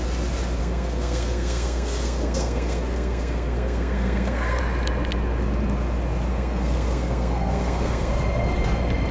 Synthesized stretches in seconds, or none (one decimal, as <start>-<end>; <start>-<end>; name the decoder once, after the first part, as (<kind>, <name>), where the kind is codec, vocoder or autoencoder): 0.6-4.6 (codec, SNAC); 6.3-8.1